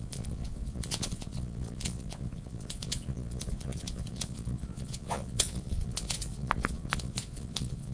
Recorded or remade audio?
remade